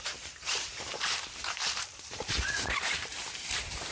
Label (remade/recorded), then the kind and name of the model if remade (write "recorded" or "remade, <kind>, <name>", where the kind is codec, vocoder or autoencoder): remade, vocoder, BigVGAN v2